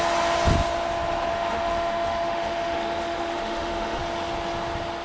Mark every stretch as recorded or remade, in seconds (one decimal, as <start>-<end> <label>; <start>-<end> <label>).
0.0-1.3 recorded; 1.3-4.0 remade; 4.0-5.0 recorded

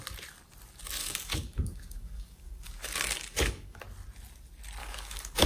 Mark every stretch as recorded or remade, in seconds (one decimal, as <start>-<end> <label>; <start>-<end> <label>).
0.0-1.0 recorded; 1.0-3.8 remade; 3.8-4.8 recorded; 4.8-5.5 remade

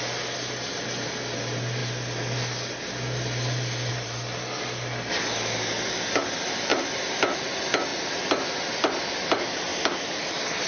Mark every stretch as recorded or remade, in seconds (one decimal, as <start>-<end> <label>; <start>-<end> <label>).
0.0-6.7 recorded; 6.7-7.2 remade; 7.2-9.7 recorded; 9.7-10.2 remade; 10.2-10.7 recorded